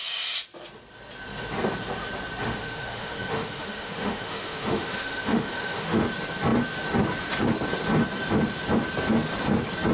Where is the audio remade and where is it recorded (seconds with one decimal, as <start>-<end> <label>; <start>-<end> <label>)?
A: 0.0-2.4 recorded; 2.4-6.0 remade; 6.0-9.9 recorded